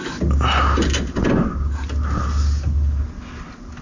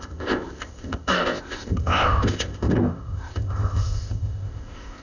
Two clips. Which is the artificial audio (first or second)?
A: second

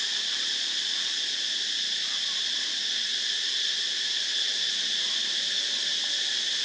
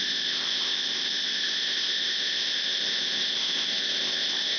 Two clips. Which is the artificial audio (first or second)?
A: second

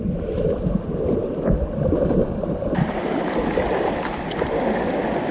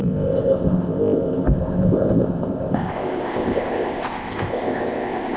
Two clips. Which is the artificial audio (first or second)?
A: second